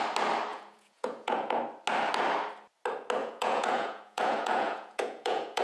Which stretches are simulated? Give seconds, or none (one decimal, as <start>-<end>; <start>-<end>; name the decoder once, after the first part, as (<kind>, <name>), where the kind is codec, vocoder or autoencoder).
0.5-1.6 (vocoder, Vocos); 3.2-5.6